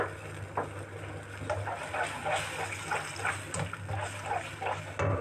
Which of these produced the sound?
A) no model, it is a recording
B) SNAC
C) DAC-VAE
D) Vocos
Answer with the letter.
A